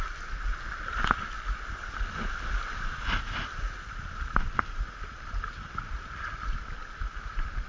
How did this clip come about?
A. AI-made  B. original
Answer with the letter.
B